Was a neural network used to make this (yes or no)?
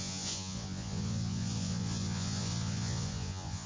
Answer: yes